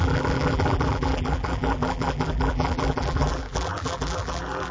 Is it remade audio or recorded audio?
remade